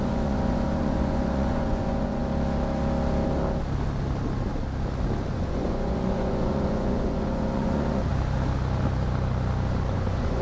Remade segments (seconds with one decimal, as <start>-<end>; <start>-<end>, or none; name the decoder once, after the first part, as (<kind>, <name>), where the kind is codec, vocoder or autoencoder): 0.0-2.2 (vocoder, Vocos); 5.3-8.1; 9.9-10.4